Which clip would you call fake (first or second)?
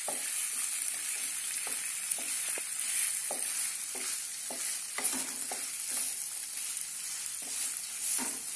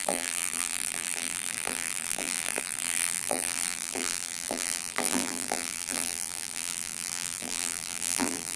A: second